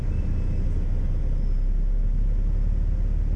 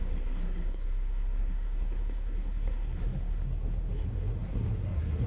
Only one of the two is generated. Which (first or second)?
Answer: second